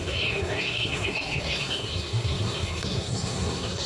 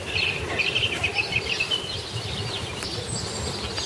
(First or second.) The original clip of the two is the second